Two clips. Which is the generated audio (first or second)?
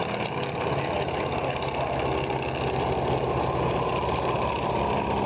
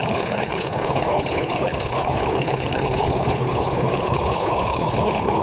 second